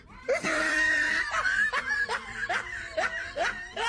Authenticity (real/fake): fake